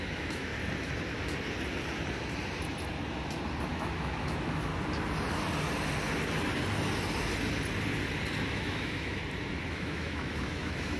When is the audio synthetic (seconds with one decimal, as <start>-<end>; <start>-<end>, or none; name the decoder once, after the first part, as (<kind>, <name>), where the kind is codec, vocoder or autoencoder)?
0.0-0.5 (autoencoder, DAC-VAE); 3.6-4.7; 8.5-9.2; 9.7-11.0